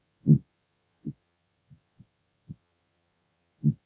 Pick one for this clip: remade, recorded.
remade